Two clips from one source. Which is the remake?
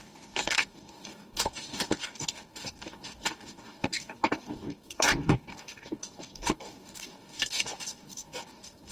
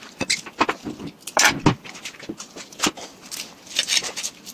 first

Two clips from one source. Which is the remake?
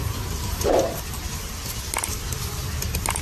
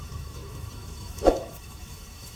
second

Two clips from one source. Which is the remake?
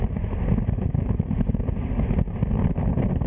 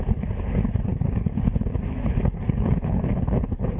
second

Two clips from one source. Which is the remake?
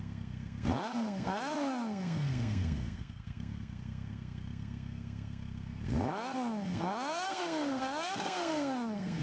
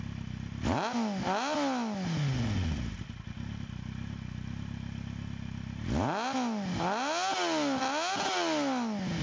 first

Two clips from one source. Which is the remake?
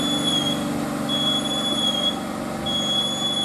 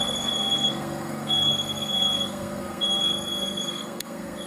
second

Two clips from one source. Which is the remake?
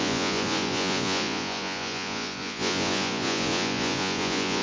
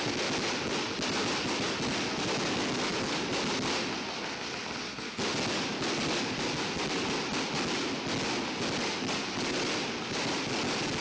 first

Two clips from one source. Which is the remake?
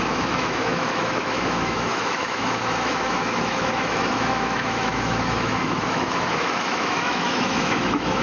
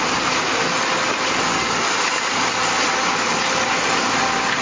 first